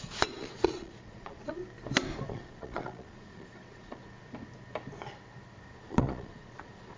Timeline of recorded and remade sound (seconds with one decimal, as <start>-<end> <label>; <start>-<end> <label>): 0.0-1.6 remade; 1.6-2.3 recorded; 2.3-4.0 remade; 4.0-5.7 recorded; 5.7-7.0 remade